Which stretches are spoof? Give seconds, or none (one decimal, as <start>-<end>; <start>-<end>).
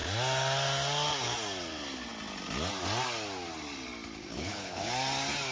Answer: 4.3-4.9